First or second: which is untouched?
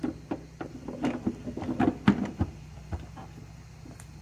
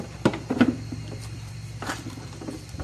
first